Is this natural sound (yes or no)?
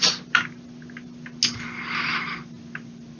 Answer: yes